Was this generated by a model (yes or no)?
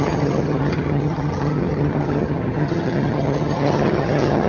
yes